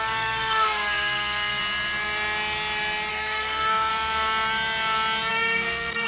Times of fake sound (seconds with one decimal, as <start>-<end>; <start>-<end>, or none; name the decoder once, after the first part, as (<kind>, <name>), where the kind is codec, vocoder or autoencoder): 0.0-1.6 (codec, SNAC); 3.1-3.9; 5.3-6.1